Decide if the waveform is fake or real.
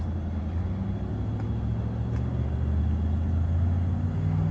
real